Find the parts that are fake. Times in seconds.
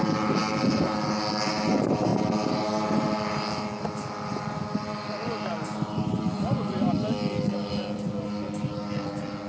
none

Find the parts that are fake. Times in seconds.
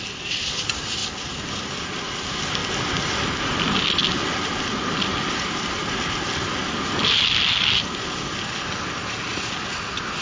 none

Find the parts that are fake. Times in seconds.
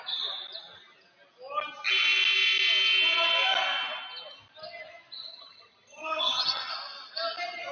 5.3-6.7 (vocoder, HiFi-GAN)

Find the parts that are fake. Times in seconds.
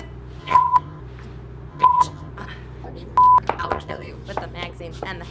0.4-1.0 (vocoder, HiFi-GAN); 1.7-2.3; 3.6-4.1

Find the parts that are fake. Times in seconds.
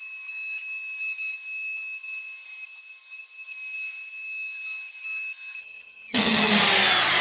5.6-6.5 (vocoder, HiFi-GAN)